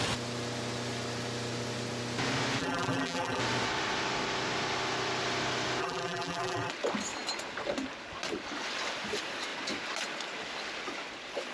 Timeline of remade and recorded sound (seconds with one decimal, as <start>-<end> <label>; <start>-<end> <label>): 0.0-2.6 recorded; 2.6-3.4 remade; 3.4-5.8 recorded; 5.8-6.7 remade; 6.7-11.5 recorded